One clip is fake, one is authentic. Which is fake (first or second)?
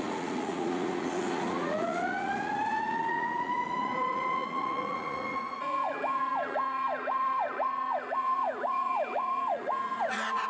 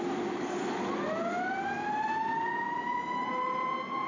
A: first